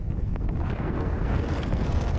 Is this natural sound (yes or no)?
no